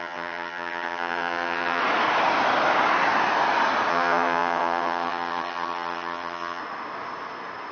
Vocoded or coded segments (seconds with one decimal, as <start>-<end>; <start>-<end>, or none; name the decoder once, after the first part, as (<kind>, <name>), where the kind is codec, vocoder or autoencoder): 0.0-1.8 (vocoder, HiFi-GAN); 3.9-6.6